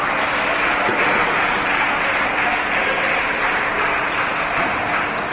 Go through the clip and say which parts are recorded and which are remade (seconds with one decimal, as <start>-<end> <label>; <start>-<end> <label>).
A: 0.0-1.2 recorded; 1.2-2.4 remade; 2.4-2.8 recorded; 2.8-3.5 remade; 3.5-5.3 recorded